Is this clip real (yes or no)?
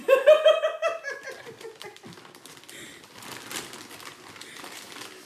yes